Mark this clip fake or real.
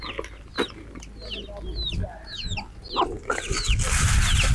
real